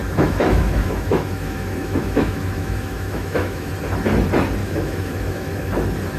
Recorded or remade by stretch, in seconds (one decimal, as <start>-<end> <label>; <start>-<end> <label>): 0.0-3.7 remade; 3.7-4.6 recorded; 4.6-5.7 remade; 5.7-6.2 recorded